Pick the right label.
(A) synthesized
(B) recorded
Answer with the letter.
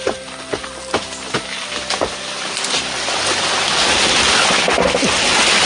B